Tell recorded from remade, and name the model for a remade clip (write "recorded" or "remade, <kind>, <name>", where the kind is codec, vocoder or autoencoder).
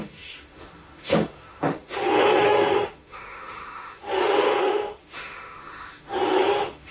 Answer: remade, autoencoder, DAC-VAE